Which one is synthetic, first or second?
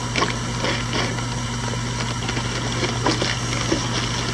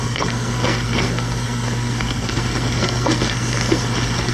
second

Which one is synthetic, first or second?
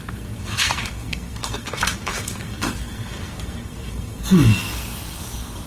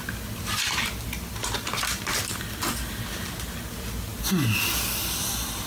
first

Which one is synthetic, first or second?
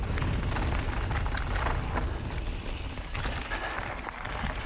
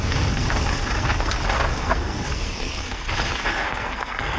second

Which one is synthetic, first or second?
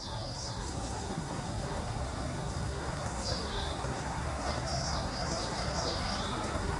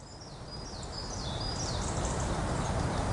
first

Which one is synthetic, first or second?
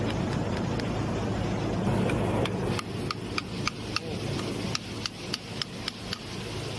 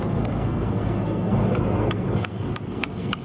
second